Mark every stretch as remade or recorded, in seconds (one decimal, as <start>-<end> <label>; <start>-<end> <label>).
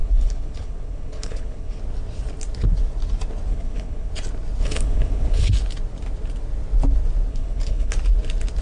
0.0-1.8 remade; 1.8-3.5 recorded; 3.5-4.1 remade; 4.1-4.6 recorded; 4.6-5.5 remade; 5.5-7.3 recorded; 7.3-7.9 remade; 7.9-8.6 recorded